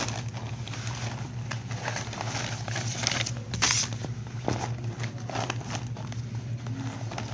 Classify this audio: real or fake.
real